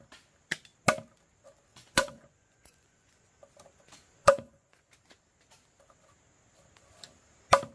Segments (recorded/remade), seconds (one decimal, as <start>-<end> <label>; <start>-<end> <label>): 0.0-1.7 recorded; 1.7-3.3 remade; 3.3-4.2 recorded; 4.2-4.9 remade; 4.9-7.7 recorded